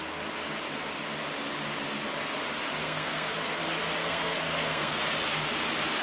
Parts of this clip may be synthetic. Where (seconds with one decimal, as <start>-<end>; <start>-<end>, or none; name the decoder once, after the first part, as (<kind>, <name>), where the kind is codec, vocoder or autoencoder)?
2.8-3.6 (codec, SNAC); 4.0-5.0